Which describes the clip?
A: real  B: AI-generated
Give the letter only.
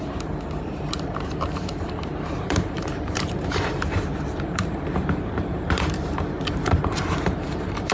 B